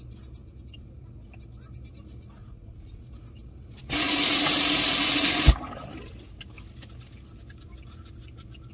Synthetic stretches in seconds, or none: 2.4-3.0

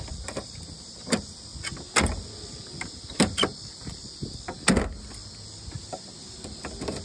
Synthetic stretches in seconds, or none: 0.0-1.5; 2.9-3.5; 5.7-7.0

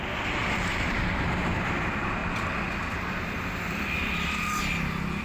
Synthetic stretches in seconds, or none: 0.4-1.0; 2.2-4.6

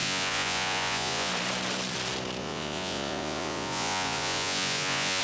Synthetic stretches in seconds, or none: 0.0-1.3; 2.4-5.2

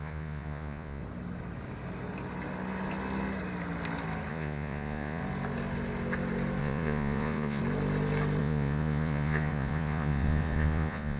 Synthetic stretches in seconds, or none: 0.0-1.0; 4.3-5.2; 6.6-7.6; 8.4-11.2

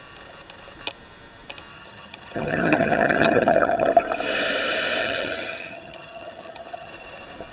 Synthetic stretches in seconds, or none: 1.7-3.9; 5.0-6.9